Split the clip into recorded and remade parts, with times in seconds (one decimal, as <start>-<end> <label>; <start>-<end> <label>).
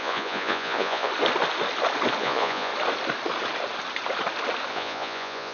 0.0-1.1 remade; 1.1-2.2 recorded; 2.2-2.7 remade; 2.7-4.7 recorded; 4.7-5.5 remade